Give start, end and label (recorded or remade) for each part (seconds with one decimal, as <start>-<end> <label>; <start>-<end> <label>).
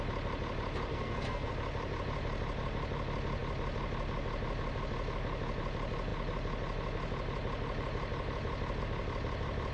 0.0-0.9 recorded; 0.9-1.5 remade; 1.5-9.7 recorded